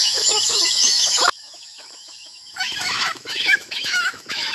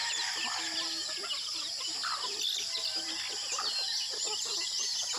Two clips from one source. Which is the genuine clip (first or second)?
second